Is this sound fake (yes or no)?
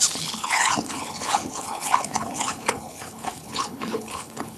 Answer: yes